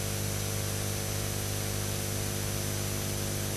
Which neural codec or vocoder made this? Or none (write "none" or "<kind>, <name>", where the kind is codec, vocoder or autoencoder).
none